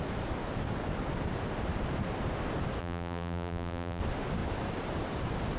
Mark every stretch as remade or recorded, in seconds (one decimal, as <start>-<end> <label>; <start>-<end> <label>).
0.0-2.8 recorded; 2.8-4.0 remade; 4.0-5.6 recorded